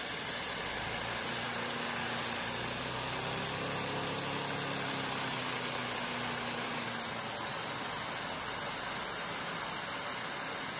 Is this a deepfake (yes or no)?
no